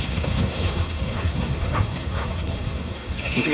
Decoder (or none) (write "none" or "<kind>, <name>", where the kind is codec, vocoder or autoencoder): codec, SNAC